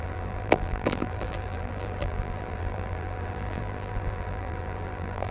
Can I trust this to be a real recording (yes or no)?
no